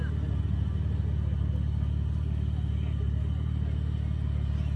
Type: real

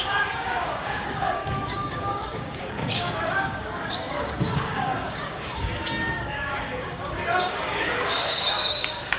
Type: fake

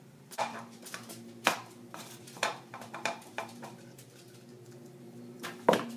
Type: fake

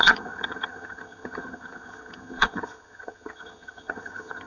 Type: fake